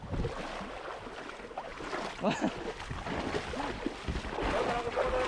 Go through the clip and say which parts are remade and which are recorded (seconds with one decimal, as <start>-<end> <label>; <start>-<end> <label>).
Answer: 0.0-5.3 recorded